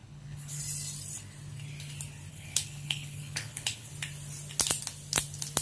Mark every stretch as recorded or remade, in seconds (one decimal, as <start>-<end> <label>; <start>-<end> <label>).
0.0-0.6 remade; 0.6-2.3 recorded; 2.3-3.9 remade; 3.9-5.6 recorded